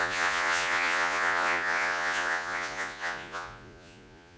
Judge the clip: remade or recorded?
remade